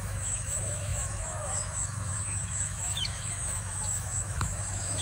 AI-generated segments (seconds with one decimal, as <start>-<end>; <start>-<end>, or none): 0.0-5.0

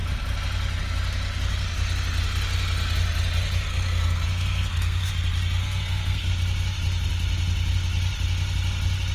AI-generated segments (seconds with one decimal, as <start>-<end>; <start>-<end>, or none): 3.7-5.1; 5.6-6.3